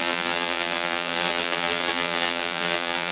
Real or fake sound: fake